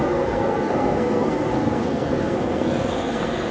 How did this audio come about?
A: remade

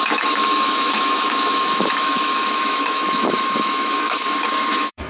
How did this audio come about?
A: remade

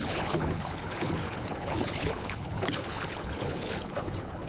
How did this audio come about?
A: remade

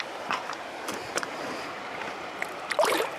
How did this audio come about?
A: remade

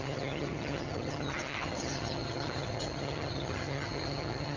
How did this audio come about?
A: remade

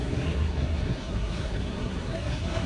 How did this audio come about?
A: remade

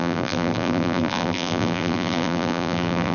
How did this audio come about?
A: remade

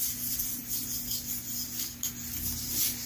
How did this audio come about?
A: recorded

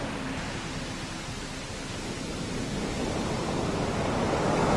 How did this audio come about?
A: recorded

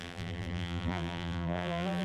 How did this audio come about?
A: remade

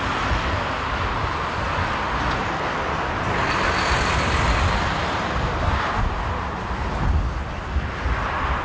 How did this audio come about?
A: recorded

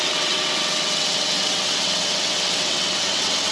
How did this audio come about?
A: remade